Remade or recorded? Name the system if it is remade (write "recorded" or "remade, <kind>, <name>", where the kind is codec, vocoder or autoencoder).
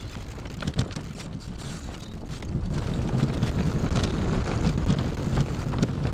recorded